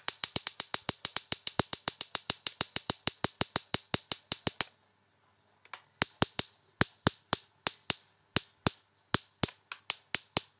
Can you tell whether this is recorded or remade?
recorded